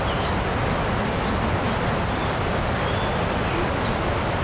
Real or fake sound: real